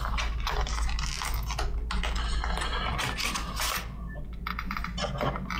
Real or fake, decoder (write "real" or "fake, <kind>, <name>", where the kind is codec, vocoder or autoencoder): real